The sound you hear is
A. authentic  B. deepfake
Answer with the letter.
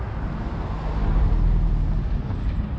A